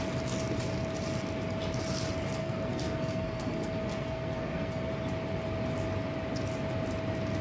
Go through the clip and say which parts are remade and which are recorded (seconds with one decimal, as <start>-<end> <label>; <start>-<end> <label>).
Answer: 0.0-2.4 recorded; 2.4-4.9 remade; 4.9-7.4 recorded